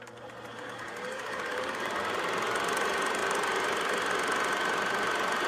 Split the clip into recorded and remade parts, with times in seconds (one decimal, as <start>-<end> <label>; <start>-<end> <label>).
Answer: 0.0-0.5 recorded; 0.5-2.0 remade; 2.0-5.5 recorded